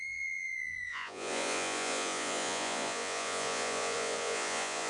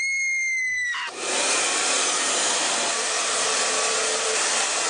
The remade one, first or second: first